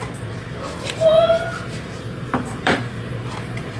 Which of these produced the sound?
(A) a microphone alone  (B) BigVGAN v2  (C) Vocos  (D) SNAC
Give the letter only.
B